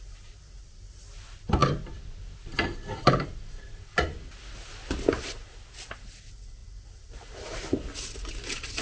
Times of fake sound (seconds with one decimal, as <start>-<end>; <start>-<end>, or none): none